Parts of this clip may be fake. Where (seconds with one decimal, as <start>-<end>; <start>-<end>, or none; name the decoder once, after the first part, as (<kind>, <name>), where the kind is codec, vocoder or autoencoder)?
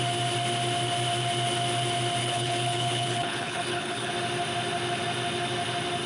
2.2-4.1 (codec, HILCodec)